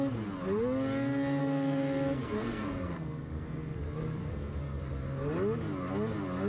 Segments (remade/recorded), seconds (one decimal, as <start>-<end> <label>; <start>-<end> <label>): 0.0-1.4 recorded; 1.4-3.8 remade; 3.8-4.2 recorded; 4.2-4.8 remade; 4.8-6.5 recorded